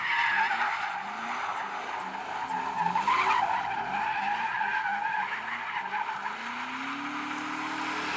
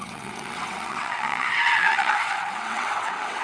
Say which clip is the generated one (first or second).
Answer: second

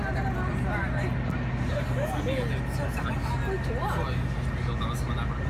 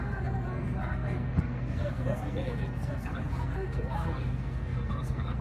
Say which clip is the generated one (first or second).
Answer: second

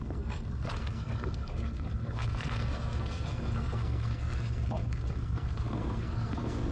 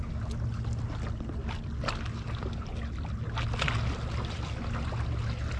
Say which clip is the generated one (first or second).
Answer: first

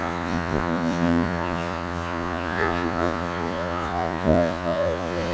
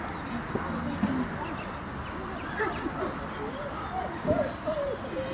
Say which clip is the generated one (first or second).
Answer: first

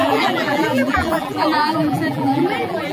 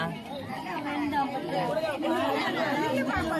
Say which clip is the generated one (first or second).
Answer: first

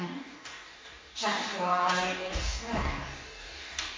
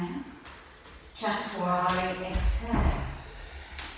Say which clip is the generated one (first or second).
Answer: first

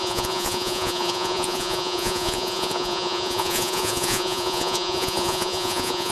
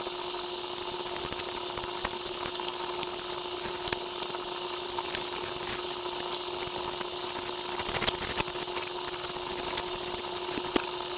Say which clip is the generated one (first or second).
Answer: first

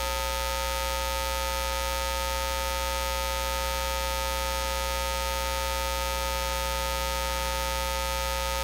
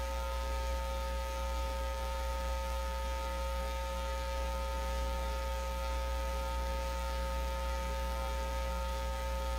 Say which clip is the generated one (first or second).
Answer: second